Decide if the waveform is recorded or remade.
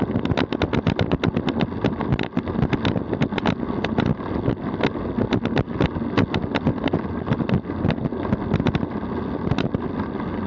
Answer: recorded